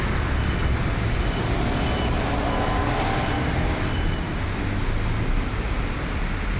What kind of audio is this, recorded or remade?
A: recorded